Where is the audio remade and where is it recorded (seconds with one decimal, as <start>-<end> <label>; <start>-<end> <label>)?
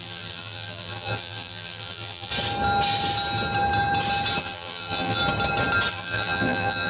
0.0-2.3 remade; 2.3-4.4 recorded; 4.4-5.2 remade; 5.2-5.9 recorded; 5.9-6.9 remade